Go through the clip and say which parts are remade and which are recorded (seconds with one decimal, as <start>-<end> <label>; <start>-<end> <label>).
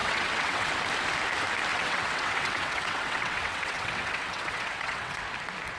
0.0-0.7 remade; 0.7-1.7 recorded; 1.7-5.2 remade; 5.2-5.8 recorded